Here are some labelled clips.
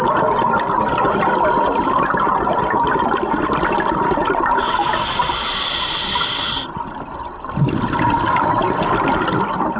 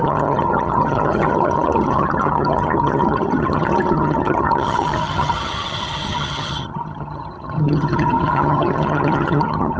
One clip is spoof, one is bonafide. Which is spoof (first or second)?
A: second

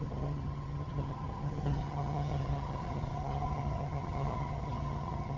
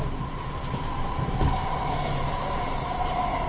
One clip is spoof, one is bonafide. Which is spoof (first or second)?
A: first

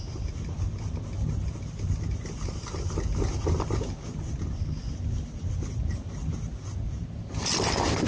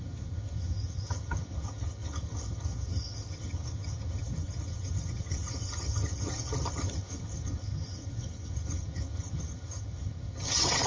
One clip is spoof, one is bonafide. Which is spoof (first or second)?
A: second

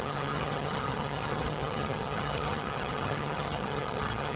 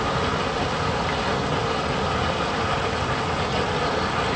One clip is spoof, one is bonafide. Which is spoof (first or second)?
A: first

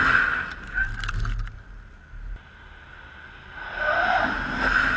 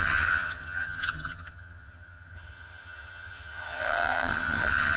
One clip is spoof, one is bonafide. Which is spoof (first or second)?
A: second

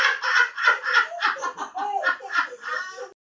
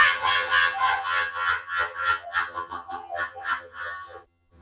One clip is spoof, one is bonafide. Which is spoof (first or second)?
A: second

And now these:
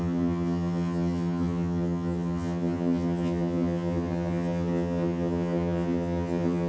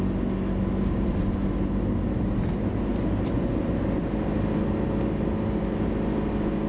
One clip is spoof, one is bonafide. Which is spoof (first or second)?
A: first